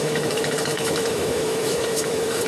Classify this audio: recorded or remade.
remade